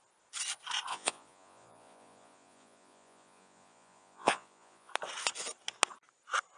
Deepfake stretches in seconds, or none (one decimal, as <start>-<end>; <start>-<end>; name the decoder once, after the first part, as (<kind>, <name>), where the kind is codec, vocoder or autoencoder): 0.9-4.9 (vocoder, Vocos)